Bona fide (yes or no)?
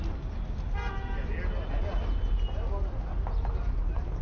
yes